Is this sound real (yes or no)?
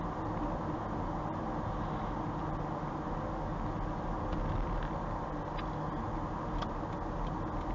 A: yes